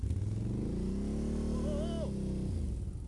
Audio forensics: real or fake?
real